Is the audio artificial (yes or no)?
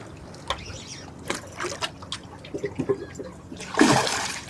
no